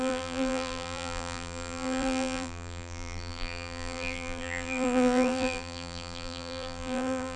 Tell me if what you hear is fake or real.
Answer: fake